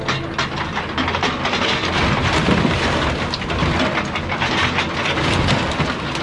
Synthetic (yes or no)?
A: no